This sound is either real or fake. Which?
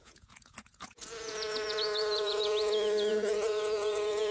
fake